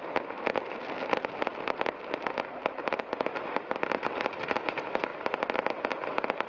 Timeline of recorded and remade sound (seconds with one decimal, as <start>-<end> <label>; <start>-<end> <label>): 0.0-1.5 recorded; 1.5-3.0 remade; 3.0-5.1 recorded; 5.1-5.9 remade; 5.9-6.5 recorded